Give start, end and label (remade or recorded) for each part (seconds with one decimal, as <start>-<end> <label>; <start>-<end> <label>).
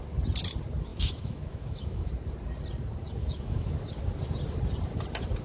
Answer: 0.0-0.9 recorded; 0.9-2.1 remade; 2.1-3.2 recorded; 3.2-3.7 remade; 3.7-5.4 recorded